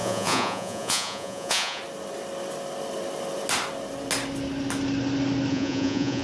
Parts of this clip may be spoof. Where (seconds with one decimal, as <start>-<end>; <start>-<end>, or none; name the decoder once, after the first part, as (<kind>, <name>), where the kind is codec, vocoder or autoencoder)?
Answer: 0.0-1.8 (vocoder, Vocos); 5.5-6.2